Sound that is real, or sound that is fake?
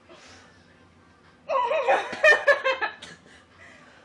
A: real